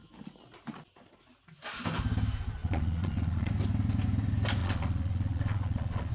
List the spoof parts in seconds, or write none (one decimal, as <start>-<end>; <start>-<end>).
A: 2.6-3.5; 4.6-6.1